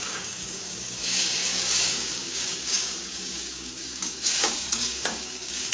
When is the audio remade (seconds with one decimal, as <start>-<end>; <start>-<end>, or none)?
0.0-5.7